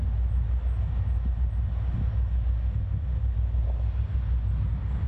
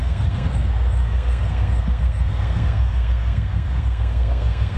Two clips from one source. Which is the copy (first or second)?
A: second